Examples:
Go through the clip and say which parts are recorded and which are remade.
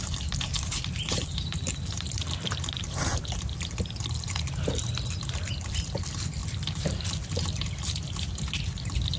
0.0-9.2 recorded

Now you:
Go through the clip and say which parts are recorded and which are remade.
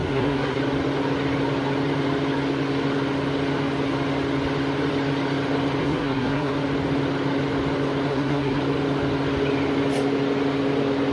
0.0-0.6 remade; 0.6-5.8 recorded; 5.8-6.5 remade; 6.5-8.1 recorded; 8.1-8.6 remade; 8.6-11.1 recorded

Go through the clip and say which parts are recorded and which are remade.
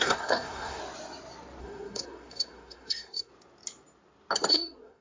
0.0-0.8 remade; 0.8-1.6 recorded; 1.6-3.3 remade; 3.3-4.5 recorded; 4.5-5.0 remade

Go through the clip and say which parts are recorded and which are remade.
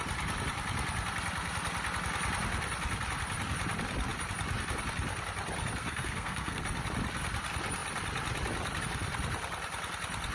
0.0-5.8 recorded; 5.8-6.6 remade; 6.6-10.3 recorded